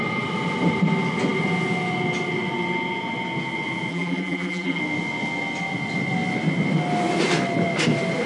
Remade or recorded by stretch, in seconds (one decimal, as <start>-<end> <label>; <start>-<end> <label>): 0.0-3.9 recorded; 3.9-4.8 remade; 4.8-8.3 recorded